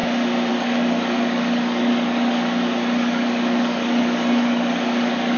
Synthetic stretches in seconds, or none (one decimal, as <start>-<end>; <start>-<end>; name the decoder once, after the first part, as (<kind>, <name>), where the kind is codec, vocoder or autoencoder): 0.5-5.4 (codec, DAC)